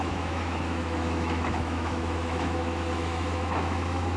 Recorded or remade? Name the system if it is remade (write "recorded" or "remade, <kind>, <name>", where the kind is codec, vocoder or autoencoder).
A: remade, autoencoder, DAC-VAE